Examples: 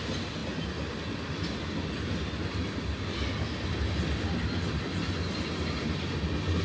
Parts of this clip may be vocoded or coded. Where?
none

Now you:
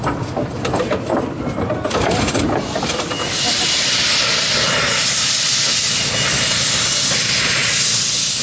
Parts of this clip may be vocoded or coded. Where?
0.0-1.1 (vocoder, BigVGAN v2); 5.9-7.6

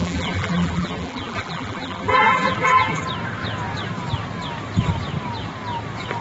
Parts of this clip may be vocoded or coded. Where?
0.0-3.0 (vocoder, BigVGAN v2)

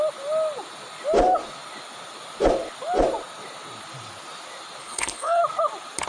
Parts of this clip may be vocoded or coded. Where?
4.8-5.4 (codec, HILCodec)

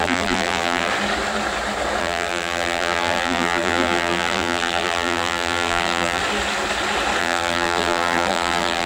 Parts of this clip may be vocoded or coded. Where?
0.0-0.9 (vocoder, BigVGAN v2); 2.0-6.2; 7.2-8.9

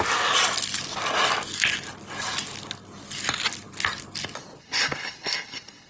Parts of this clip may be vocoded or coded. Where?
4.6-5.9 (codec, HILCodec)

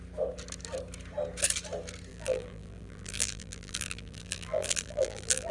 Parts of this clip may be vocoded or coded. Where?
2.1-5.5 (vocoder, BigVGAN v2)